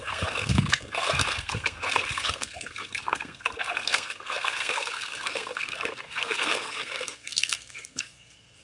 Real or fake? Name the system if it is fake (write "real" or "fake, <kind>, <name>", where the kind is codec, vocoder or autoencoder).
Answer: fake, codec, SNAC